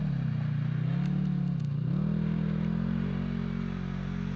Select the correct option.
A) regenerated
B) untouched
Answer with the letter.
B